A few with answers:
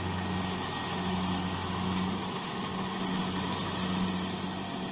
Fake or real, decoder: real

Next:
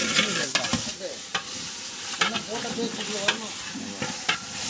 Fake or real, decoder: real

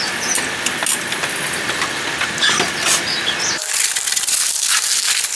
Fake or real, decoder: real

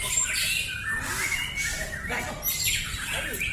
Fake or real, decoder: real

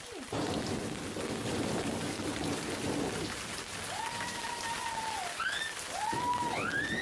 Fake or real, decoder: real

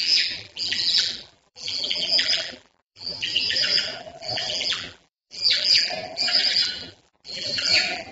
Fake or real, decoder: fake, vocoder, BigVGAN v2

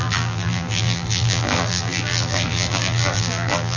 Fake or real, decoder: fake, vocoder, BigVGAN v2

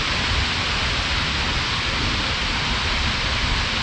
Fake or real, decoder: real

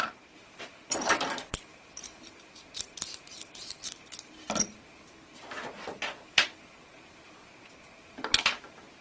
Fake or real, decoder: fake, vocoder, BigVGAN v2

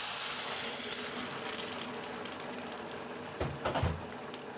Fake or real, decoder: real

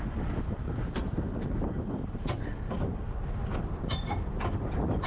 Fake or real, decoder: fake, vocoder, BigVGAN v2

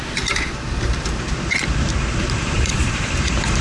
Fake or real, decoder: fake, vocoder, BigVGAN v2